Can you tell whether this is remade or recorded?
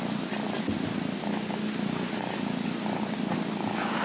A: recorded